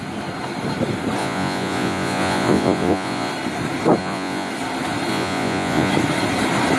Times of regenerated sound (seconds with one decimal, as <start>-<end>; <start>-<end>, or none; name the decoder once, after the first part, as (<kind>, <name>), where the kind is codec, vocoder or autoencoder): 1.2-3.3 (vocoder, Vocos); 4.0-4.5; 5.1-5.9